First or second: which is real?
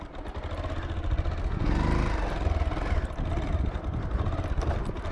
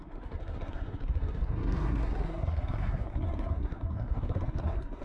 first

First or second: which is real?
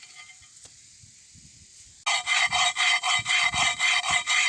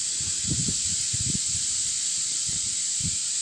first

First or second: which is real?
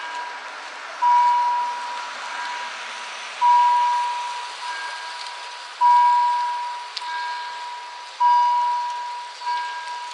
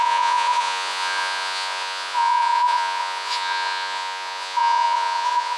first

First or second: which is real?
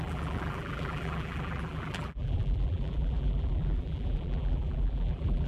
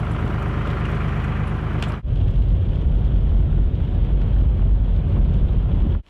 second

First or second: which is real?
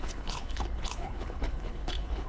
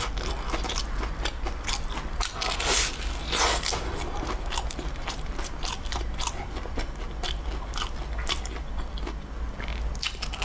second